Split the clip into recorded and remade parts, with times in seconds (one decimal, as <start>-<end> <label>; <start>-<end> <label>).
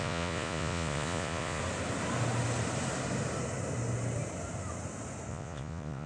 0.0-1.6 remade; 1.6-5.3 recorded; 5.3-6.1 remade